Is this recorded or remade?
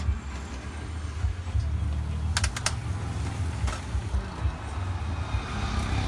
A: recorded